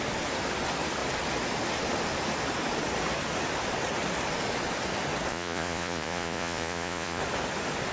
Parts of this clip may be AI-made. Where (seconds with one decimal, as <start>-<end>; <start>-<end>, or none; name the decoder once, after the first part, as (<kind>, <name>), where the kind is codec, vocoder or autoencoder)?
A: 5.3-7.2 (vocoder, Vocos)